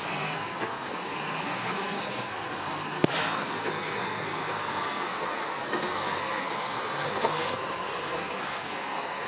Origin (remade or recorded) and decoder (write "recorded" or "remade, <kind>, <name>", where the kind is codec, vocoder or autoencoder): remade, codec, SNAC